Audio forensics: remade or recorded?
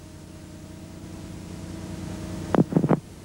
recorded